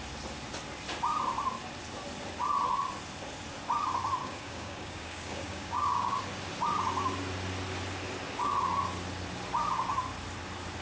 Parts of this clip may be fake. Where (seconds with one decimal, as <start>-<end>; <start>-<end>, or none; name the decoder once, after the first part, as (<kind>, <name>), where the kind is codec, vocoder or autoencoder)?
4.2-6.2 (codec, DAC)